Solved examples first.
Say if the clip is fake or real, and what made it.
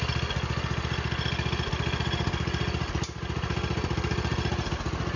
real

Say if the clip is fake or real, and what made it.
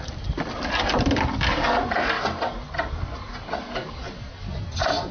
real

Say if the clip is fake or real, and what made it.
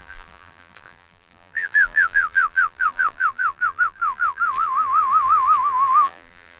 fake, vocoder, BigVGAN v2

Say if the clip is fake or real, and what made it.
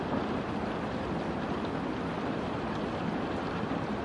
real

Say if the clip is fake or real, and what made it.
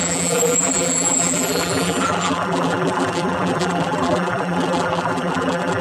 fake, vocoder, BigVGAN v2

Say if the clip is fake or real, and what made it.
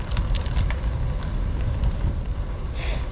real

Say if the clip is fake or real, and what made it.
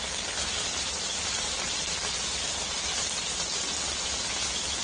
real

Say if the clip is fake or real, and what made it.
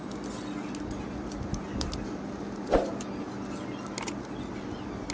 real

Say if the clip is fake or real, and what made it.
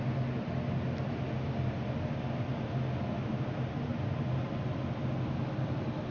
real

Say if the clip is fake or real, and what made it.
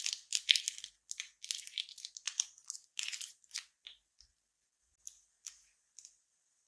real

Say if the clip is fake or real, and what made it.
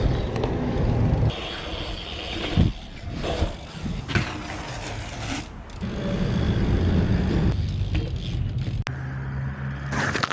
real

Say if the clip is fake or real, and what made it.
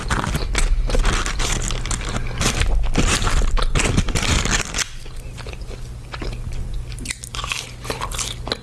real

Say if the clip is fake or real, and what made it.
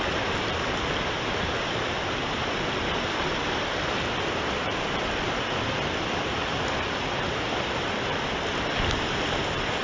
fake, vocoder, BigVGAN v2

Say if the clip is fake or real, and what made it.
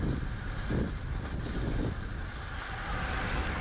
real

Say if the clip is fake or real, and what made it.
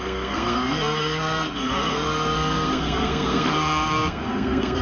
fake, codec, SNAC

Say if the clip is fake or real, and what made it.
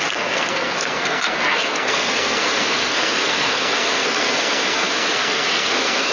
fake, codec, SNAC